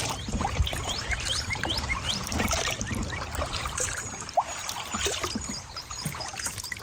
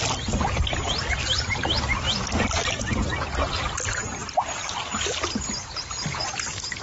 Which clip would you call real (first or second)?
second